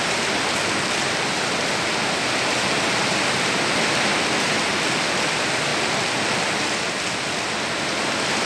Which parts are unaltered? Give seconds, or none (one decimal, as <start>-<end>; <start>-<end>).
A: 0.0-8.5